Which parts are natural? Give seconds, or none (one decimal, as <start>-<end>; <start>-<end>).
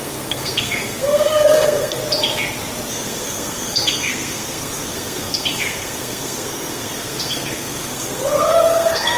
2.0-2.9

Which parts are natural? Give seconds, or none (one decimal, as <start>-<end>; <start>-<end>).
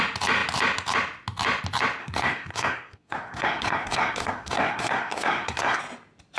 0.0-2.0; 5.8-6.4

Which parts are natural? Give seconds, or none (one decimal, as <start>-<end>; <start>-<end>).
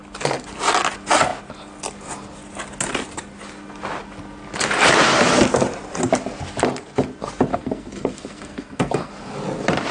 0.0-7.5; 9.1-9.9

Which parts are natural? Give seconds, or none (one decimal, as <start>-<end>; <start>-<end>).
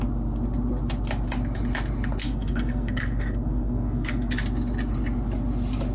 0.0-2.2; 4.3-5.9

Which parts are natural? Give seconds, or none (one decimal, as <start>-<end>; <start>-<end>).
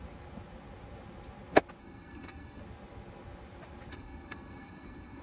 0.0-1.8; 2.6-3.9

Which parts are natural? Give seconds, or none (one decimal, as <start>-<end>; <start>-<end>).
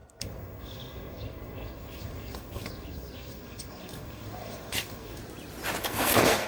5.2-5.8